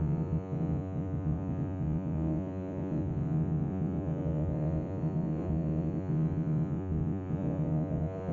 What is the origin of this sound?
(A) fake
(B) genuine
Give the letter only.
A